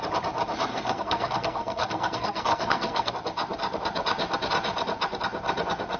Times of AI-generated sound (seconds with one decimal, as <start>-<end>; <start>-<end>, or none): 0.7-3.1